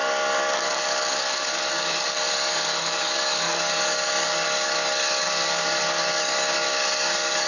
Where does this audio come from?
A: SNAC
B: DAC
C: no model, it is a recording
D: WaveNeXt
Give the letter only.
B